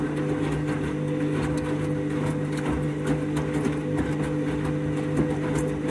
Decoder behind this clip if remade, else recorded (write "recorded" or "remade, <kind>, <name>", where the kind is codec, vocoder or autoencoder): recorded